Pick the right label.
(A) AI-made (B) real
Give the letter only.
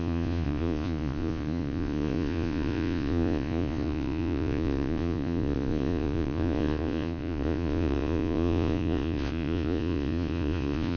A